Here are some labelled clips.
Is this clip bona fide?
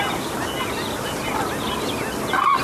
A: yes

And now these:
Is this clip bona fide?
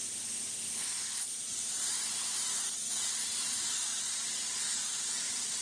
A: yes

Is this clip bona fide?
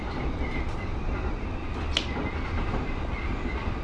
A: yes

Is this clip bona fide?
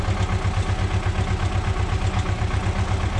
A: yes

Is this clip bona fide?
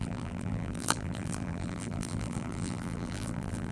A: no